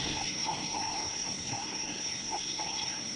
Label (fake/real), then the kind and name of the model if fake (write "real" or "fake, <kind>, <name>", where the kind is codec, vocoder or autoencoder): fake, codec, SNAC